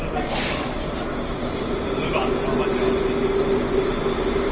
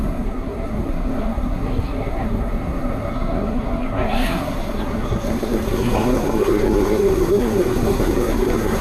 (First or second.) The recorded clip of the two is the first